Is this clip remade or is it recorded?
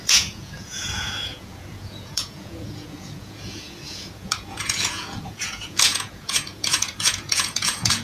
remade